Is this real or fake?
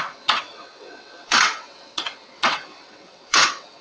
fake